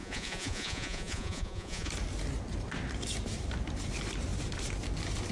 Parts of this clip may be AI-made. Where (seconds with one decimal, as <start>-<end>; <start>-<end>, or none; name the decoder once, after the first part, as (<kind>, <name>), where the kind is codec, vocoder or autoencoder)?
0.0-1.9 (vocoder, Vocos)